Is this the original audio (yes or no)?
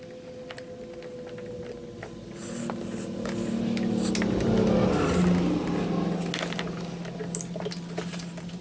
yes